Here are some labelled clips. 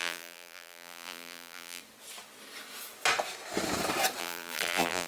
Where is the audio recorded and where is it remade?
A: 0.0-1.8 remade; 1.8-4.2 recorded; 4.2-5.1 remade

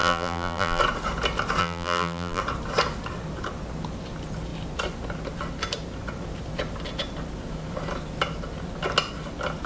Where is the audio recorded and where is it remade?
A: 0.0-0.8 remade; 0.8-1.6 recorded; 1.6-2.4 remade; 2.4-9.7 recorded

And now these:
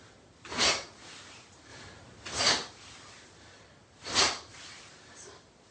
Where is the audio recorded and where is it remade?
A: 0.0-4.5 recorded; 4.5-5.7 remade

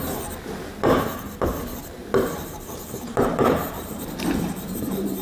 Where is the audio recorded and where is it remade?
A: 0.0-2.0 recorded; 2.0-5.2 remade